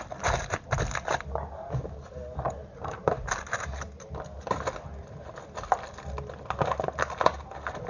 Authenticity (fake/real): real